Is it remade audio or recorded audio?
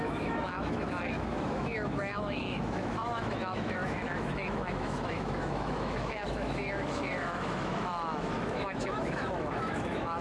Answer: remade